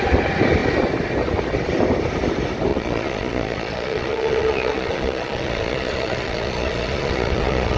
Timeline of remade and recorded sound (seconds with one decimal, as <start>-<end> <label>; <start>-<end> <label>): 0.0-2.7 recorded; 2.7-7.8 remade